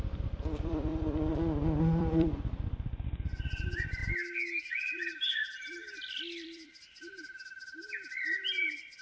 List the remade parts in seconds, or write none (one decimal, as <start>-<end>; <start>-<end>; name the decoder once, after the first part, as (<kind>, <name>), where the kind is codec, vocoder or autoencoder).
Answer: 0.0-0.9 (vocoder, BigVGAN v2); 1.8-4.0; 4.6-9.0